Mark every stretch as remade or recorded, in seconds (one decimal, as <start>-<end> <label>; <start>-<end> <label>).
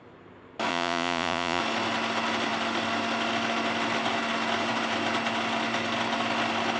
0.0-0.7 recorded; 0.7-1.6 remade; 1.6-6.8 recorded